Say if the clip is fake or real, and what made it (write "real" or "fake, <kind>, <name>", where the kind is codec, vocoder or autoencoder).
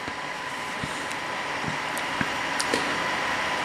fake, vocoder, BigVGAN v2